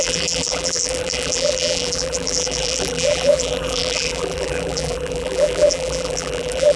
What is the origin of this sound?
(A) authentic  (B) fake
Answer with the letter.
B